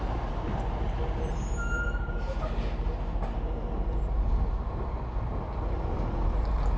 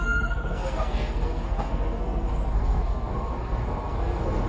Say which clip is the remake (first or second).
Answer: second